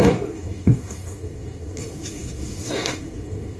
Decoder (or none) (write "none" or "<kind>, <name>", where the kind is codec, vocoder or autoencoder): codec, SNAC